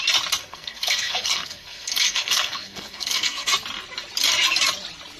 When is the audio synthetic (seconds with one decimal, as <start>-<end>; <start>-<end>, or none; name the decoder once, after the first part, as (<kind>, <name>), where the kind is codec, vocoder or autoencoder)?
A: 0.4-3.5 (codec, SNAC)